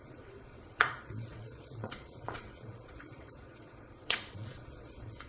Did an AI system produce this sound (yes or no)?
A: yes